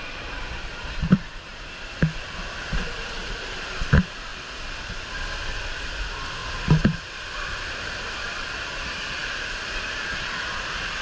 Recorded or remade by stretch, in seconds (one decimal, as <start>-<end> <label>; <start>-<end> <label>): 0.0-0.7 recorded; 0.7-1.5 remade; 1.5-6.4 recorded; 6.4-8.0 remade; 8.0-11.0 recorded